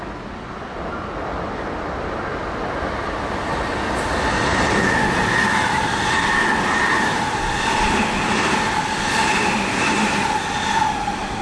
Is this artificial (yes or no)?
no